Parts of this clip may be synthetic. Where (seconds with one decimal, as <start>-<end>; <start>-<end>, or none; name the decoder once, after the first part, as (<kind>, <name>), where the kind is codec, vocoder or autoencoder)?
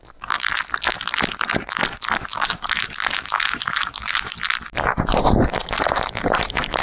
2.3-6.8 (vocoder, BigVGAN v2)